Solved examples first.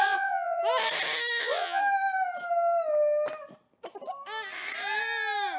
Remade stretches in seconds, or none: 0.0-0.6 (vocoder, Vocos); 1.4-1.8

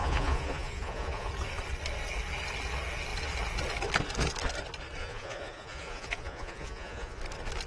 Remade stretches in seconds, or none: 0.0-1.3 (vocoder, Vocos); 5.0-7.2

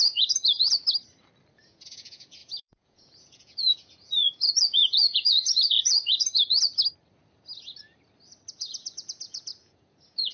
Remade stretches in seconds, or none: 0.0-0.8 (vocoder, Vocos); 1.5-6.7; 8.5-10.3

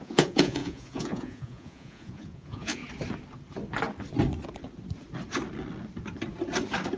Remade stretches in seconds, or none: 0.0-2.8 (vocoder, Vocos)

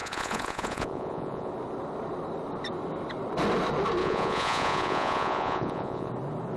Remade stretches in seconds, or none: 0.0-1.5 (vocoder, Vocos); 4.0-6.1